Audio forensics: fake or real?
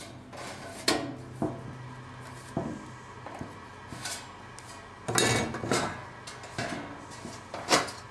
real